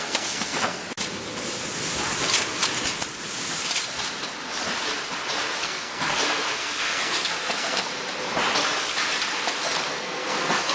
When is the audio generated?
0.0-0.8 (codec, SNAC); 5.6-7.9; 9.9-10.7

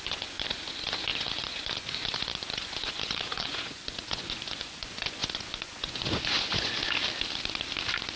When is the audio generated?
0.0-6.8 (vocoder, Vocos)